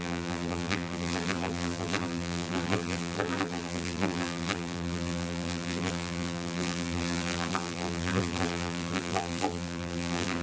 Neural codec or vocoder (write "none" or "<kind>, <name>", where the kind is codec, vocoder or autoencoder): vocoder, BigVGAN v2